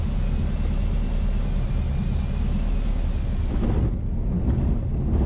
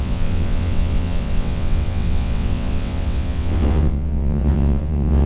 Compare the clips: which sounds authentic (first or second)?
first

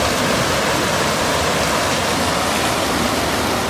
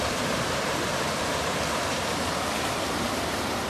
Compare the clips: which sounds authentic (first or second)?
first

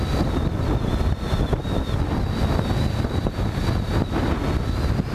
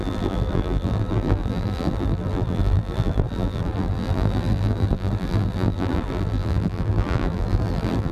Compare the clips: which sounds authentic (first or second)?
first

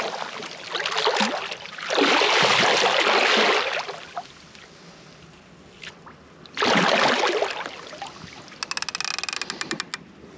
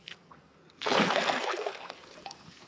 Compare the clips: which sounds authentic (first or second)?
first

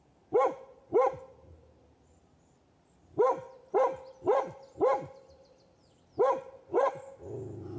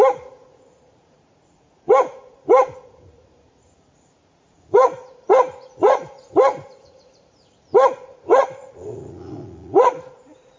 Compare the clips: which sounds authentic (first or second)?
first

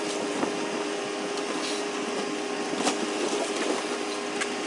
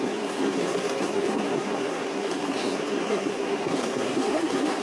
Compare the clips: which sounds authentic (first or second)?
first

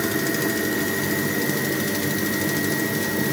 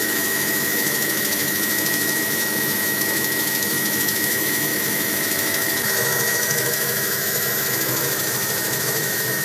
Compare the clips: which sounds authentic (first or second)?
first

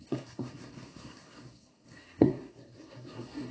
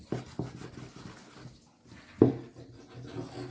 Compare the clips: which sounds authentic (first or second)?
second